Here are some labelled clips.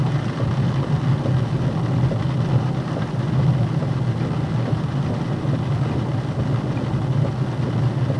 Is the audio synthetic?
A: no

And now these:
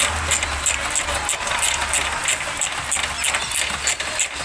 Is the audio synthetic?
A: no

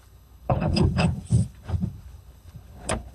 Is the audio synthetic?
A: yes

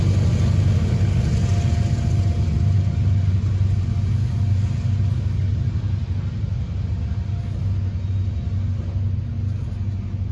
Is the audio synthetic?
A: no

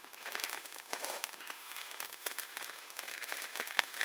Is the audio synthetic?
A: yes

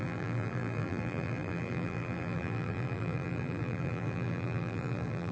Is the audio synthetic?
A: yes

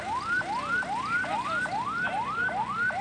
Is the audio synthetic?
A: no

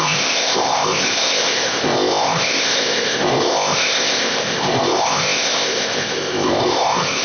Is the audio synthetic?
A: yes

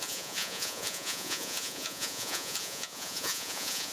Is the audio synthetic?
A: yes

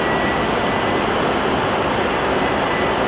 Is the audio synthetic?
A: no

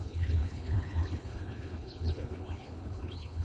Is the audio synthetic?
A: yes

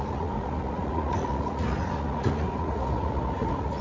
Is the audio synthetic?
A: yes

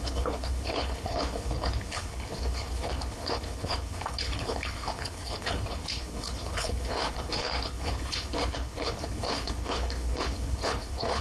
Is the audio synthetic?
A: yes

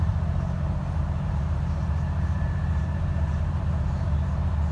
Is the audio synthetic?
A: yes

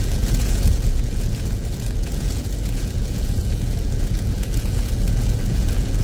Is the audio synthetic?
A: yes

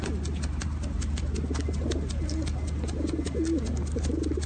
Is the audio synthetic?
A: no